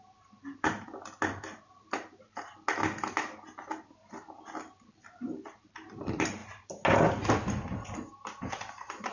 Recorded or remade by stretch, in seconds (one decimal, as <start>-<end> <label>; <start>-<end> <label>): 0.0-0.9 remade; 0.9-5.4 recorded; 5.4-6.4 remade; 6.4-8.5 recorded; 8.5-9.1 remade